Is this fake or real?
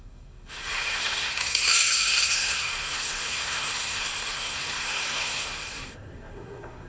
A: fake